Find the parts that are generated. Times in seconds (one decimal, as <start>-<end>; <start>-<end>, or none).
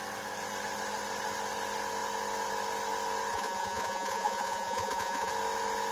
3.3-5.3